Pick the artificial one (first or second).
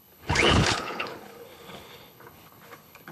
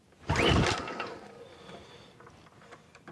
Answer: first